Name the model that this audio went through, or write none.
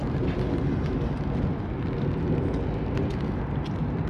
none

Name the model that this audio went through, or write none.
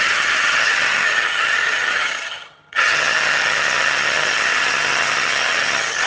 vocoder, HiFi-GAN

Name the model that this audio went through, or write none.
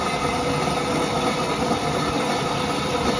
none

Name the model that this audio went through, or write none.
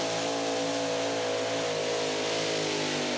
none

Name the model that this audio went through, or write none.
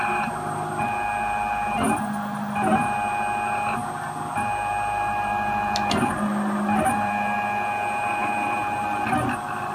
none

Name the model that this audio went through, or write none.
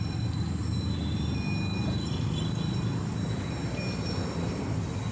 none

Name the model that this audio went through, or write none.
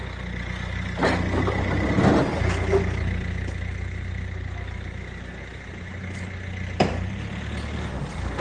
none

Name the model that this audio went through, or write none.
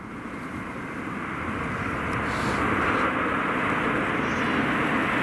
none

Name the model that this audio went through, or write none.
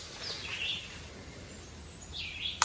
none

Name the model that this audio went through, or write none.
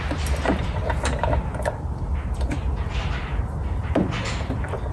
none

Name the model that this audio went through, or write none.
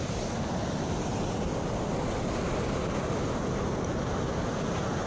none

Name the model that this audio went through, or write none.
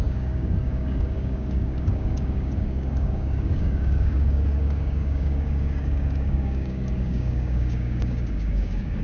codec, DAC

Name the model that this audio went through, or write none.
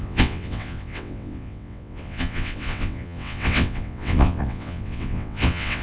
vocoder, WaveNeXt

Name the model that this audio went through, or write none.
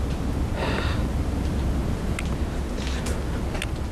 none